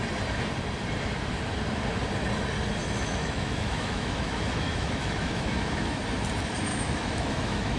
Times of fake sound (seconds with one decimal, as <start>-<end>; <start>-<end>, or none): 2.8-6.0; 6.7-7.8